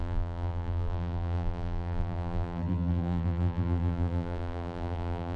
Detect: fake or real fake